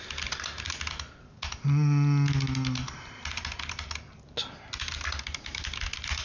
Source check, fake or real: real